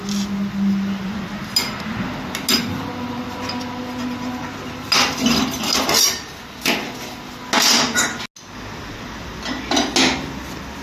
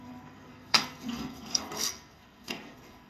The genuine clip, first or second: first